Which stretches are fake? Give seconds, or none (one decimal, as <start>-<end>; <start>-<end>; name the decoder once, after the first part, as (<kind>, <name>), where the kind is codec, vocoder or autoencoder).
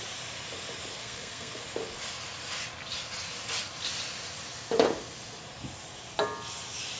1.0-1.6 (codec, SNAC)